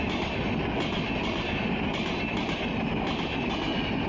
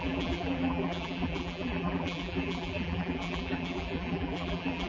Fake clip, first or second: second